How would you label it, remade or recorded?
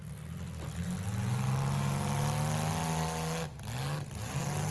recorded